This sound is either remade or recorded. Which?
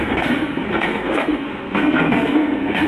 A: remade